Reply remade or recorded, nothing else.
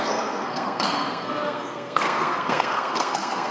remade